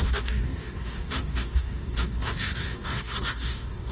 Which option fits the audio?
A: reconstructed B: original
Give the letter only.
A